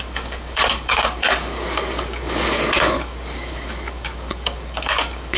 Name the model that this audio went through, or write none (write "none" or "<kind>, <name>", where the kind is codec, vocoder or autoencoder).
codec, DAC